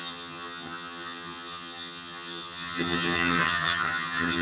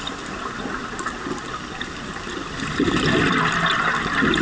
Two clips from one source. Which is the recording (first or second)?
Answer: second